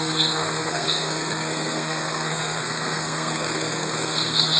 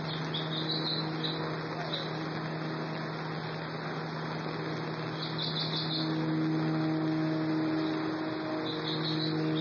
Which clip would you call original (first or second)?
second